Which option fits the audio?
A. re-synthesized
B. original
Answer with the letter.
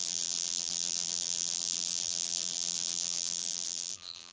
A